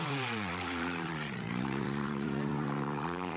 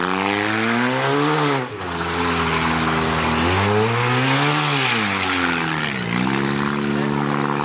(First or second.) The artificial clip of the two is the first